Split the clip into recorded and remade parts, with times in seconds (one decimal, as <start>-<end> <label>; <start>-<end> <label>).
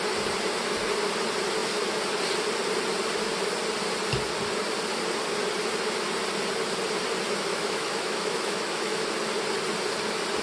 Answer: 0.0-7.5 recorded; 7.5-9.1 remade; 9.1-10.4 recorded